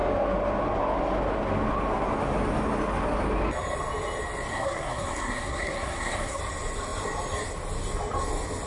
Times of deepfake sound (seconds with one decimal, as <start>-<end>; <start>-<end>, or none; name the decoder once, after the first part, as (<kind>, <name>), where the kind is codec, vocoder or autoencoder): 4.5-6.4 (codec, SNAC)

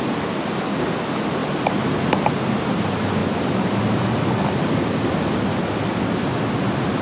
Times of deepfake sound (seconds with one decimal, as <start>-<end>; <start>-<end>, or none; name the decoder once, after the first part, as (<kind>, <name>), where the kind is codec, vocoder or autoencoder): none

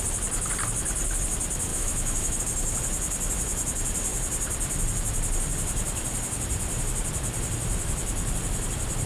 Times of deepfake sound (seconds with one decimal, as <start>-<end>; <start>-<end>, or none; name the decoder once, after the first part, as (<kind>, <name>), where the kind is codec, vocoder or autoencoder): 1.7-2.4 (autoencoder, DAC-VAE)

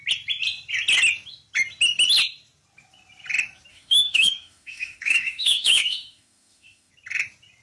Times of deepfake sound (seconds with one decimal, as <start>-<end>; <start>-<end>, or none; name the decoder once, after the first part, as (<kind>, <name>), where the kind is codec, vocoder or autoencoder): 3.7-6.9 (autoencoder, DAC-VAE)

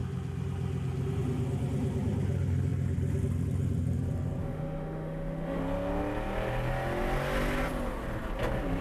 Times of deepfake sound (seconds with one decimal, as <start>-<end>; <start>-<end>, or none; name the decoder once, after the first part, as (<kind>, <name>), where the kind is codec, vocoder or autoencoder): 4.4-5.6 (autoencoder, DAC-VAE)